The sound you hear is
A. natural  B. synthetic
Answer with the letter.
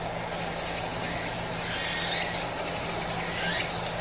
A